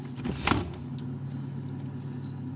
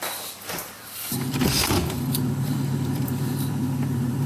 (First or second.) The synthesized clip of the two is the second